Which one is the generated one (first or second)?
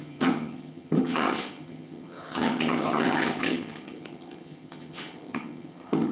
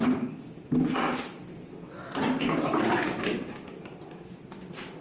first